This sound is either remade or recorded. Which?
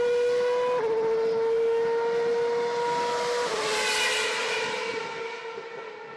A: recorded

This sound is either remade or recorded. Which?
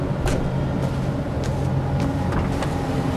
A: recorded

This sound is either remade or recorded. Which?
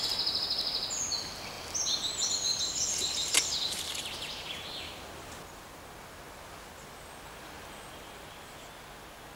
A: recorded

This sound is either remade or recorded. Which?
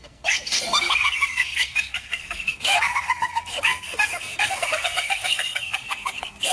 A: remade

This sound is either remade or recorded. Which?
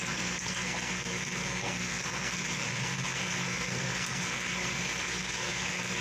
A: remade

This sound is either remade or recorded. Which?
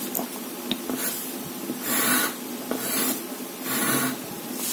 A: recorded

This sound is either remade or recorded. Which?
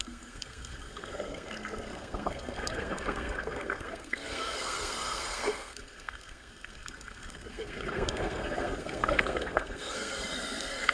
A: remade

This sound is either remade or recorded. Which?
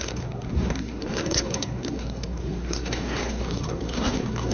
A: remade